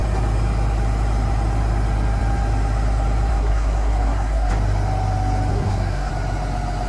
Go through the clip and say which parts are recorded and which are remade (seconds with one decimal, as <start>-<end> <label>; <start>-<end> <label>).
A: 0.0-3.3 recorded; 3.3-4.5 remade; 4.5-5.5 recorded; 5.5-6.1 remade; 6.1-6.9 recorded